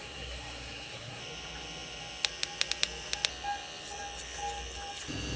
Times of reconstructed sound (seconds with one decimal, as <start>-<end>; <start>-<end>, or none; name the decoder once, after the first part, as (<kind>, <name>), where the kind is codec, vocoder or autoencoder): 0.0-1.2 (codec, SNAC)